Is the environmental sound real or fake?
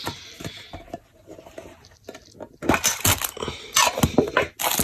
real